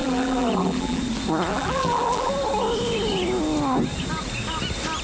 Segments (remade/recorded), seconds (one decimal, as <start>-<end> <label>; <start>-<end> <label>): 0.0-1.0 remade; 1.0-1.5 recorded; 1.5-2.3 remade; 2.3-5.0 recorded